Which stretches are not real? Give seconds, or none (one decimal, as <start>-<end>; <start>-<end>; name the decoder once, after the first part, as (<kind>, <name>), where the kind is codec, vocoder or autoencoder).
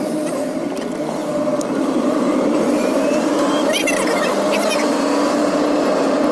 1.2-5.0 (vocoder, BigVGAN v2)